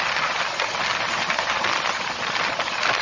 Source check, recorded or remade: recorded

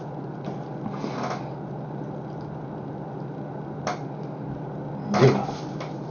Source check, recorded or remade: recorded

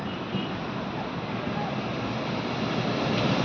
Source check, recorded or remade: remade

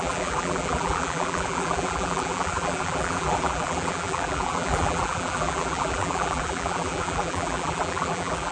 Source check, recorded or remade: remade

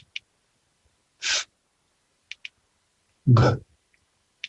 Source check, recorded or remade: recorded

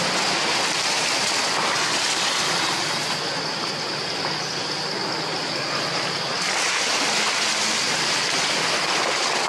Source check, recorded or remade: recorded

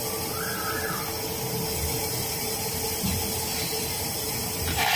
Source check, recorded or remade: recorded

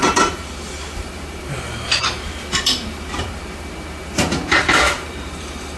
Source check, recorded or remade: remade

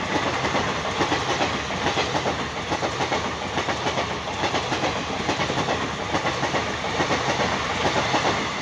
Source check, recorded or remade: recorded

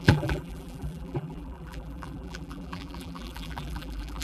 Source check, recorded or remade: remade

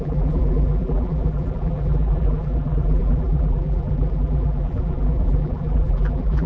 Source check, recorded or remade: remade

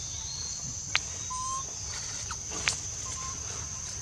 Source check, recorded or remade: recorded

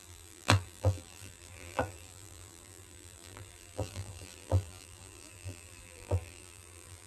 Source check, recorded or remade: remade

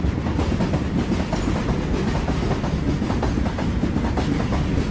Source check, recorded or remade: recorded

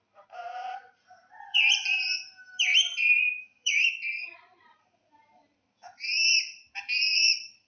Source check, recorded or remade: remade